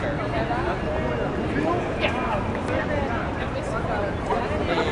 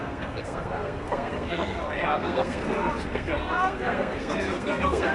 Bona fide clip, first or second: first